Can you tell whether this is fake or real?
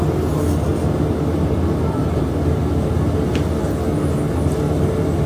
real